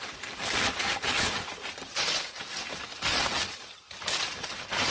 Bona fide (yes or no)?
yes